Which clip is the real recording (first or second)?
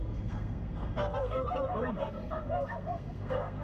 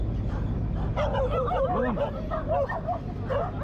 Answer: second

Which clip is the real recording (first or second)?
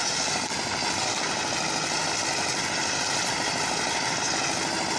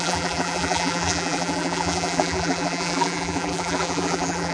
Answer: first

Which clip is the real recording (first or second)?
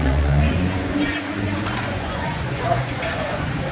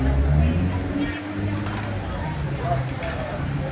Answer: second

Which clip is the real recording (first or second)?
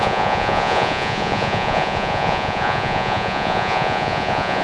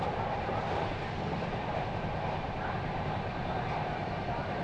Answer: second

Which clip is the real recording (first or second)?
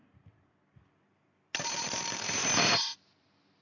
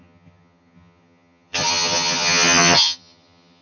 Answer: first